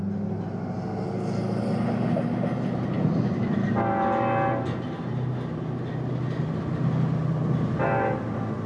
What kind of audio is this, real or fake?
real